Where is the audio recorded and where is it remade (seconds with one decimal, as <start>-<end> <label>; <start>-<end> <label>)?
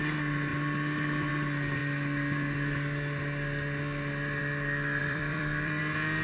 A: 0.0-5.0 recorded; 5.0-5.8 remade; 5.8-6.2 recorded